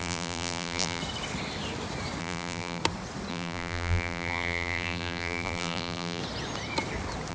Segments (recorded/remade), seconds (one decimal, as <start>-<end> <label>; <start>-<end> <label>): 0.0-1.0 remade; 1.0-2.2 recorded; 2.2-2.8 remade; 2.8-3.3 recorded; 3.3-6.2 remade; 6.2-7.3 recorded